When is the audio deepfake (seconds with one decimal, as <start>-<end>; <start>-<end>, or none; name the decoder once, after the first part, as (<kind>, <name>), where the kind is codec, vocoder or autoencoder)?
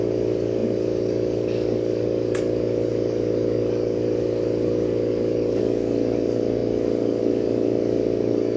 0.0-8.6 (codec, DAC)